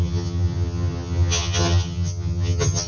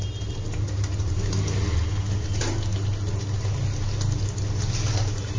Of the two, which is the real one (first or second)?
second